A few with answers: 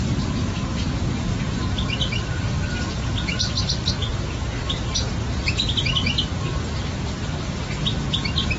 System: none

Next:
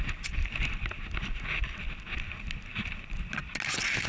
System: none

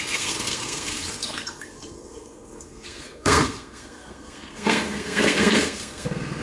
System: codec, SNAC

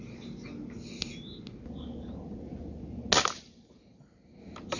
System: none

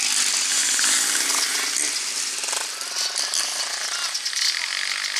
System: none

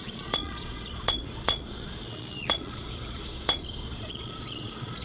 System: vocoder, Vocos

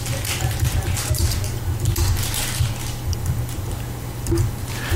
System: none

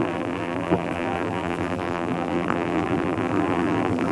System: vocoder, BigVGAN v2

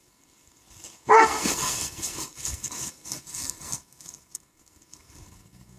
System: codec, SNAC